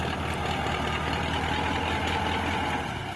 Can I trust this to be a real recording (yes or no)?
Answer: yes